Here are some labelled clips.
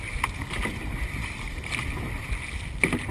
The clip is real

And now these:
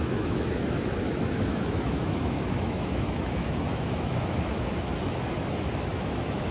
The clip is fake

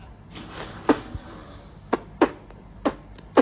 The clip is real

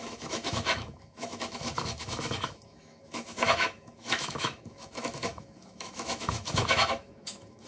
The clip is fake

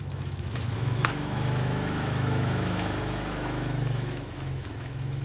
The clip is fake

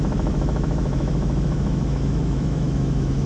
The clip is fake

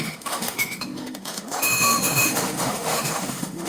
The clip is fake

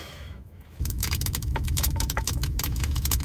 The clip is fake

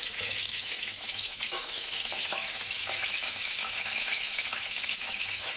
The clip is fake